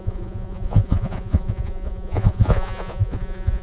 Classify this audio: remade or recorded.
remade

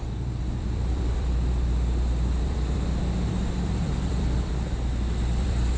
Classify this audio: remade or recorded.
remade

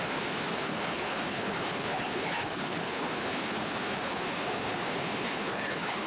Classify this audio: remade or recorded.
remade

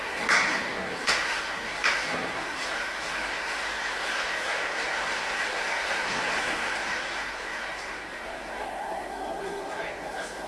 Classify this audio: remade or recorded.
remade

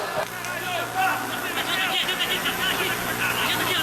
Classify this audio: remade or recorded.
recorded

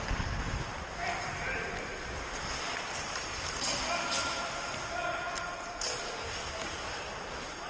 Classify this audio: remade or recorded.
recorded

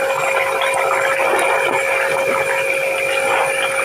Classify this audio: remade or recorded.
recorded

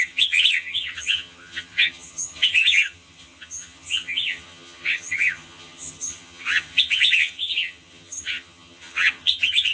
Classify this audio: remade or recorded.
remade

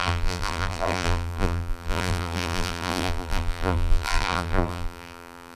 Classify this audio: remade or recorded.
remade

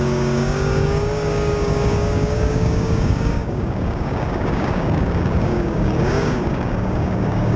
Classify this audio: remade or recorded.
remade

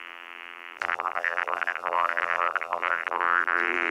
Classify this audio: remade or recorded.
remade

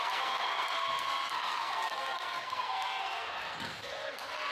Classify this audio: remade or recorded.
remade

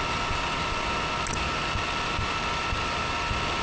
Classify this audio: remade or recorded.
recorded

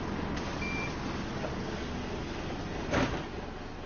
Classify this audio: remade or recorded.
recorded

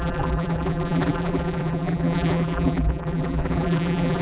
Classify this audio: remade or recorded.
remade